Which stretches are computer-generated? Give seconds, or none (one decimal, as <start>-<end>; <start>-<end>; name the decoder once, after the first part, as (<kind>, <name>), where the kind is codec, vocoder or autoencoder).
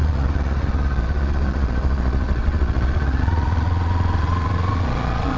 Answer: 0.0-5.4 (vocoder, Vocos)